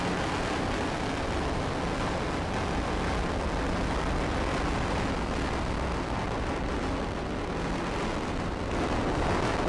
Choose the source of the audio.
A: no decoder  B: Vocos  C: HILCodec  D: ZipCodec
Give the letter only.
A